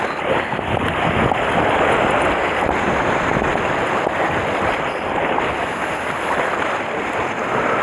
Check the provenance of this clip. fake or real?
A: real